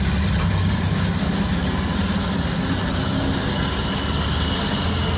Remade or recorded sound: recorded